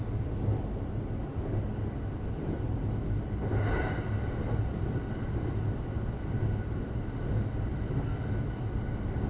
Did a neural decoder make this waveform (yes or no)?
no